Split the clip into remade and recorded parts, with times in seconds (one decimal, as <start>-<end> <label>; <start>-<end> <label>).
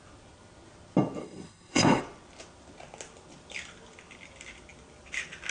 0.0-1.2 recorded; 1.2-2.0 remade; 2.0-5.5 recorded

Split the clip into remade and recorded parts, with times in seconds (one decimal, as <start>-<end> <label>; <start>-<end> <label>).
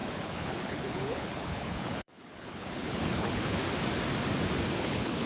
0.0-3.6 remade; 3.6-4.8 recorded; 4.8-5.3 remade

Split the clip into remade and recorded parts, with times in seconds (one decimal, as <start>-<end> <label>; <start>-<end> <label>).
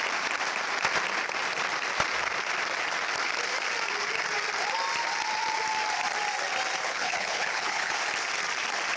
0.0-6.8 recorded; 6.8-8.0 remade; 8.0-9.0 recorded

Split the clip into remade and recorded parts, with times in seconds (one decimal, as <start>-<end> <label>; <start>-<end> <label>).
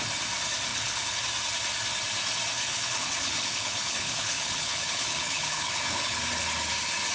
0.0-0.7 recorded; 0.7-1.2 remade; 1.2-2.7 recorded; 2.7-6.2 remade; 6.2-7.1 recorded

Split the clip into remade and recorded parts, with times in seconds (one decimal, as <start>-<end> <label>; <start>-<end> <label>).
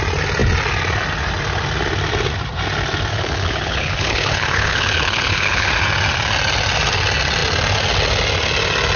0.0-3.1 recorded; 3.1-5.7 remade; 5.7-9.0 recorded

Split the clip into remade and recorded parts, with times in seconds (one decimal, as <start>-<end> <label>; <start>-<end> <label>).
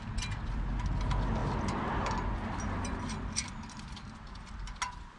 0.0-5.2 recorded